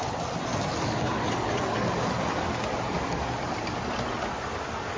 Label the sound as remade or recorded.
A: recorded